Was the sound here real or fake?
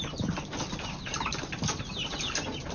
real